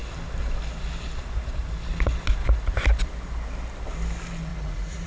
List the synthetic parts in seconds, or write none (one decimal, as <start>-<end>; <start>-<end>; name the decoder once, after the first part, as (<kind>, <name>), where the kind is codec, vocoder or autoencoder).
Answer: 4.5-5.1 (vocoder, Vocos)